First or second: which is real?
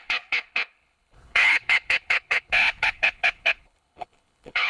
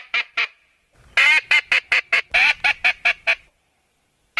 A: second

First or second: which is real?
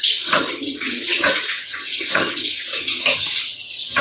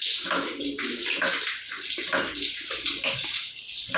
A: second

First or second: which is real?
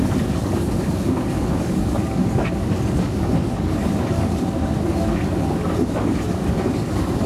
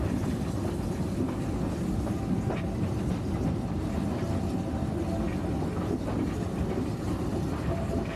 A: second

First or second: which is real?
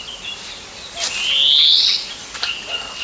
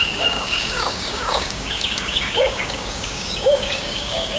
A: first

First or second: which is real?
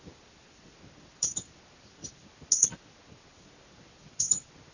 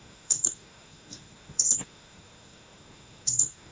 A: first